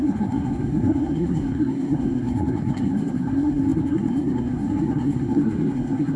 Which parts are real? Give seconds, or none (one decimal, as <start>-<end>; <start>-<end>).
none